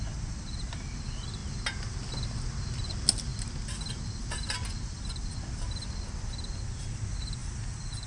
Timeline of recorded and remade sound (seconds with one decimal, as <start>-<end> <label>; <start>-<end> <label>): 0.0-8.1 recorded